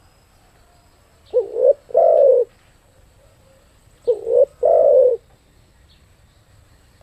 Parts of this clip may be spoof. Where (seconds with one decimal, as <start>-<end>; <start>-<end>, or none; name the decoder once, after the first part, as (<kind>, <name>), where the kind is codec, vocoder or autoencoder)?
0.0-5.1 (vocoder, BigVGAN v2); 6.5-7.0